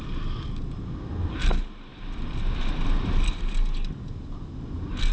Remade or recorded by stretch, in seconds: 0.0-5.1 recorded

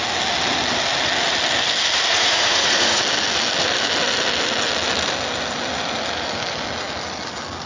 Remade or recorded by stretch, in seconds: 0.0-2.1 recorded; 2.1-3.0 remade; 3.0-7.7 recorded

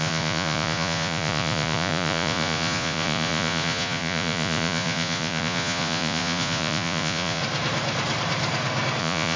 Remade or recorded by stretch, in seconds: 0.0-7.4 remade; 7.4-9.0 recorded; 9.0-9.4 remade

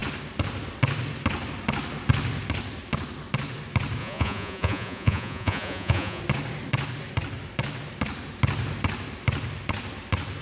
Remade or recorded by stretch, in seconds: 0.0-4.0 recorded; 4.0-6.2 remade; 6.2-10.4 recorded

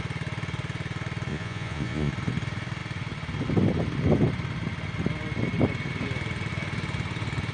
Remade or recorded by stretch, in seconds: 0.0-1.3 recorded; 1.3-2.1 remade; 2.1-7.5 recorded

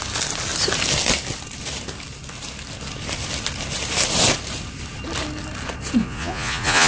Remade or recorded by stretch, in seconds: 0.0-6.0 recorded; 6.0-6.9 remade